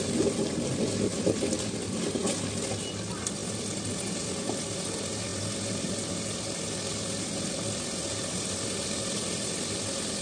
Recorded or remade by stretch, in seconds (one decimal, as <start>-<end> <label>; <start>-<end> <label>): 0.0-10.2 recorded